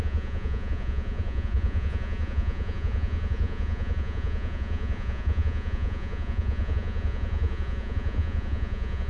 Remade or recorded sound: remade